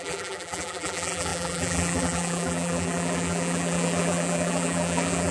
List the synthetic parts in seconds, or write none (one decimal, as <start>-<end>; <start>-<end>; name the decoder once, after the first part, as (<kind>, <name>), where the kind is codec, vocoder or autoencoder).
0.0-5.3 (vocoder, BigVGAN v2)